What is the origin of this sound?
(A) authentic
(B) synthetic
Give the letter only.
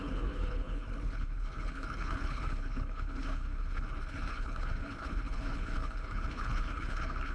B